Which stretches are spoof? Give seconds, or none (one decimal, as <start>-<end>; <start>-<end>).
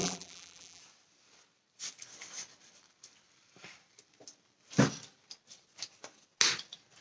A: 0.0-0.8